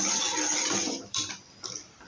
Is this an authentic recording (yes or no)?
no